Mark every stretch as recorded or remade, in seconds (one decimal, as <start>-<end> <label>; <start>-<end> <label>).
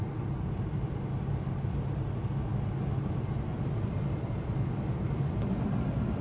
0.0-3.5 recorded; 3.5-5.3 remade; 5.3-6.2 recorded